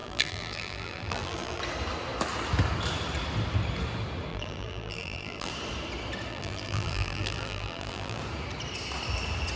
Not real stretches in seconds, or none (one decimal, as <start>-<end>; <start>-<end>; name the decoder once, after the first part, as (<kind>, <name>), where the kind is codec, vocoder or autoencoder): 0.0-1.6 (vocoder, BigVGAN v2); 4.3-5.5; 6.3-8.2